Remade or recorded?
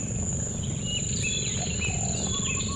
recorded